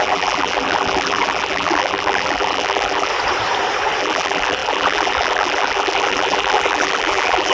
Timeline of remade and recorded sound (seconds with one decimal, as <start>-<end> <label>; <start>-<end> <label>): 0.0-3.1 remade; 3.1-4.0 recorded; 4.0-7.5 remade